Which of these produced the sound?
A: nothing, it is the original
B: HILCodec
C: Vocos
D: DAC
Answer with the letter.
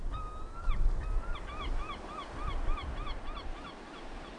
A